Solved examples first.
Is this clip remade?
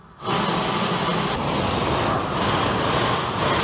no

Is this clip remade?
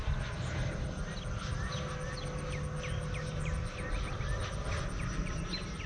no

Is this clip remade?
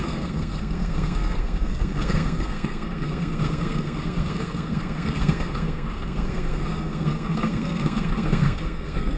yes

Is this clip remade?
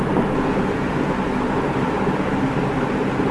no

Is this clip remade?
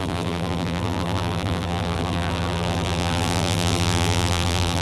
yes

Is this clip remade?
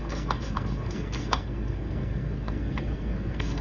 yes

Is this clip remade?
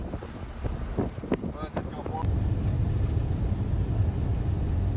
no